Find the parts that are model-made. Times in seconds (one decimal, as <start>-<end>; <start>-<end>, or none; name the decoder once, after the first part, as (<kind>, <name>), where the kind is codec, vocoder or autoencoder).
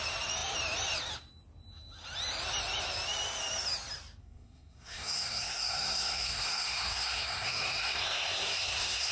4.2-9.1 (codec, SNAC)